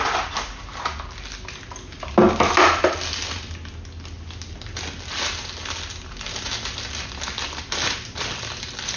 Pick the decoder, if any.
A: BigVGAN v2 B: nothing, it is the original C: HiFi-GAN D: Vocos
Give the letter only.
B